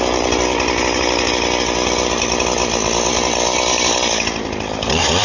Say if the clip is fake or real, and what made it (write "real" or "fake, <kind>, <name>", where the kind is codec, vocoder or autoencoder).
real